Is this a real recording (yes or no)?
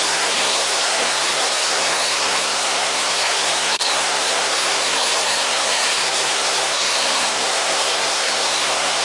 no